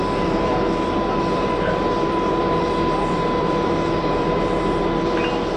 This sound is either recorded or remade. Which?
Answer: remade